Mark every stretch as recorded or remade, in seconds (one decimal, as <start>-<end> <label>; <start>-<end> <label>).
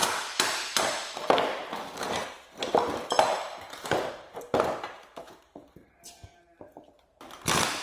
0.0-1.1 recorded; 1.1-7.8 remade